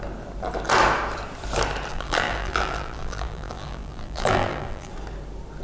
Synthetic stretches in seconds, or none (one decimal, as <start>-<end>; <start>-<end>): 1.9-4.9